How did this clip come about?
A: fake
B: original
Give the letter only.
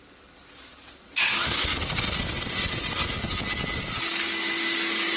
B